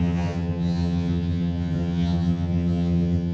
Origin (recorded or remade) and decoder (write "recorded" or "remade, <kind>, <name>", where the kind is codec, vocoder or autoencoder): remade, vocoder, HiFi-GAN